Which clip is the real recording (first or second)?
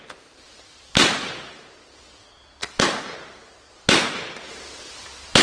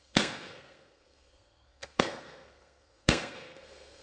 first